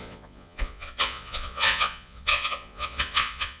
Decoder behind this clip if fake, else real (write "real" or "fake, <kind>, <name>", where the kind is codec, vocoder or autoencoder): fake, vocoder, Vocos